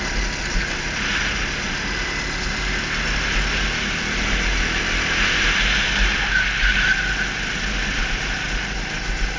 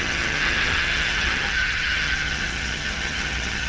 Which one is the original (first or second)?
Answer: first